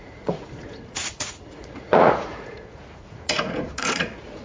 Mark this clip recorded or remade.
remade